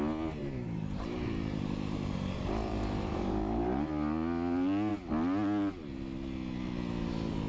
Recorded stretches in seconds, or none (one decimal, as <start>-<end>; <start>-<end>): 0.0-0.4; 3.9-7.5